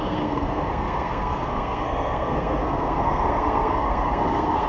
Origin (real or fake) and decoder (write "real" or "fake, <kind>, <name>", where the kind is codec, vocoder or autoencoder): fake, codec, SNAC